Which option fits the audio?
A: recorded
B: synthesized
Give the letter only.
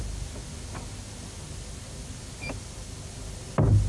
A